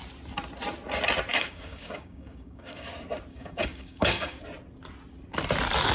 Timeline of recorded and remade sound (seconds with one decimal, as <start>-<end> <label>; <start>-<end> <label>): 0.0-1.3 recorded; 1.3-2.9 remade; 2.9-3.3 recorded; 3.3-4.4 remade; 4.4-5.9 recorded

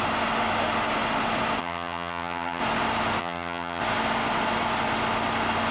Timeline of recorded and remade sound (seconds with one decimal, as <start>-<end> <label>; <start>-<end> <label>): 0.0-1.6 recorded; 1.6-2.6 remade; 2.6-3.2 recorded; 3.2-3.8 remade; 3.8-5.7 recorded

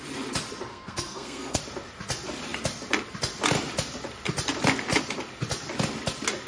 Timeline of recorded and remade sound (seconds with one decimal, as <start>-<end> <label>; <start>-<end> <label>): 0.0-0.7 recorded; 0.7-1.6 remade; 1.6-6.5 recorded

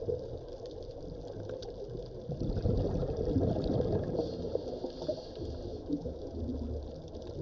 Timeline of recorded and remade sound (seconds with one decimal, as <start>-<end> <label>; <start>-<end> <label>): 0.0-5.7 recorded; 5.7-6.4 remade; 6.4-7.4 recorded

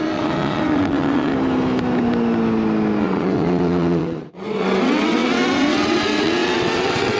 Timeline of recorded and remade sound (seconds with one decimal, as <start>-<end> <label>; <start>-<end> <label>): 0.0-1.3 remade; 1.3-3.0 recorded; 3.0-7.2 remade

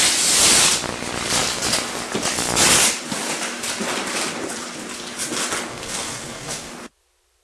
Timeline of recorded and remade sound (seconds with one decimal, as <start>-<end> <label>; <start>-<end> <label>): 0.0-5.7 recorded; 5.7-6.7 remade; 6.7-7.4 recorded